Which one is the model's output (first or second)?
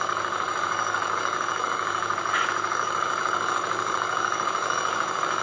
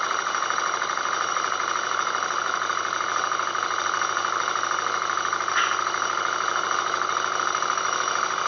first